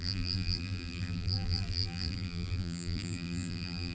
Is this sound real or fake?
fake